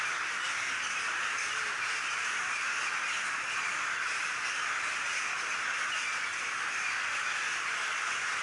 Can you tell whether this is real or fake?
real